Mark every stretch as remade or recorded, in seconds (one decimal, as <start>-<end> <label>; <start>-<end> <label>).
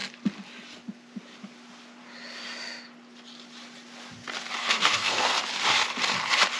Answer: 0.0-4.6 recorded; 4.6-5.4 remade; 5.4-6.6 recorded